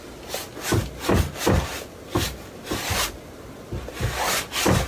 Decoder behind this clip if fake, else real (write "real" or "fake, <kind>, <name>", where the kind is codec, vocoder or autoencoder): real